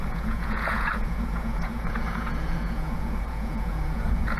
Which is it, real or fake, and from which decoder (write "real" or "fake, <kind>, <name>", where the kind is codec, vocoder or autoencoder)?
fake, vocoder, Vocos